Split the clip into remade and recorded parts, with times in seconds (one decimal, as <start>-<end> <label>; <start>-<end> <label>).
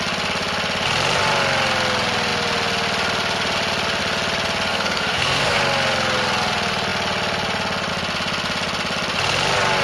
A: 0.0-4.7 recorded; 4.7-5.6 remade; 5.6-9.8 recorded